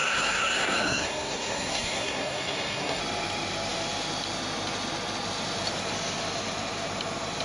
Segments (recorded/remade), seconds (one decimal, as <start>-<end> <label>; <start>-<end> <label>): 0.0-3.0 remade; 3.0-7.4 recorded